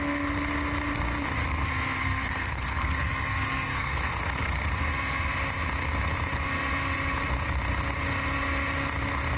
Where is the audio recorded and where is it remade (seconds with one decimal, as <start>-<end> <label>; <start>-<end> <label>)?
0.0-2.0 recorded; 2.0-4.7 remade; 4.7-9.4 recorded